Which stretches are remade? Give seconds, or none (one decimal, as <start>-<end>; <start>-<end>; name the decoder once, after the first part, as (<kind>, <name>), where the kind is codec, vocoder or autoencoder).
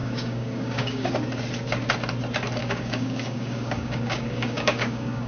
0.0-1.1 (codec, DAC); 2.6-5.3